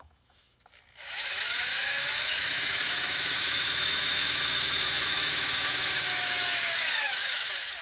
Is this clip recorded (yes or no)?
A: no